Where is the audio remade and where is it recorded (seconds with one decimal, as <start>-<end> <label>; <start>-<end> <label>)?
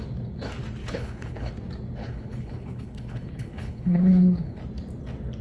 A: 0.0-0.8 recorded; 0.8-1.5 remade; 1.5-2.0 recorded; 2.0-4.6 remade; 4.6-5.4 recorded